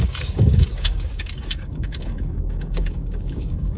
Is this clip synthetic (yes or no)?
yes